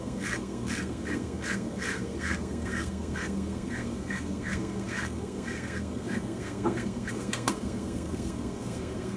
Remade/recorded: remade